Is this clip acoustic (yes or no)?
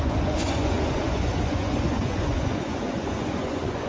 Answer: no